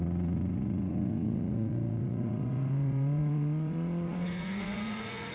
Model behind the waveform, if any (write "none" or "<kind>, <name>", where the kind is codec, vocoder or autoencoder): vocoder, Vocos